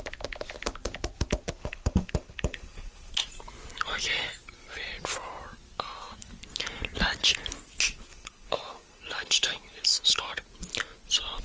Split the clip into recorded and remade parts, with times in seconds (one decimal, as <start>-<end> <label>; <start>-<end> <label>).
0.0-1.6 recorded; 1.6-3.1 remade; 3.1-8.1 recorded; 8.1-10.2 remade; 10.2-11.4 recorded